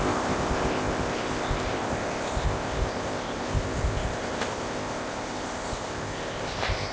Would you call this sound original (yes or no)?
no